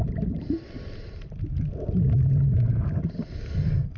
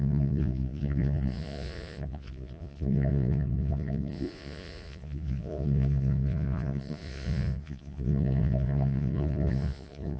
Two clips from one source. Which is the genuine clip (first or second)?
first